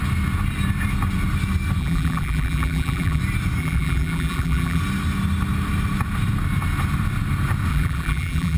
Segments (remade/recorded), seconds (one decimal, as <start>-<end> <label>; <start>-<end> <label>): 0.0-1.8 recorded; 1.8-3.2 remade; 3.2-3.6 recorded; 3.6-4.8 remade; 4.8-7.7 recorded; 7.7-8.6 remade